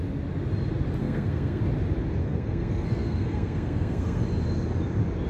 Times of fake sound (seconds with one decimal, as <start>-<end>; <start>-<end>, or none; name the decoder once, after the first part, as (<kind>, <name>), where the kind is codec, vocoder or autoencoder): 1.0-1.6 (codec, SNAC); 2.2-4.2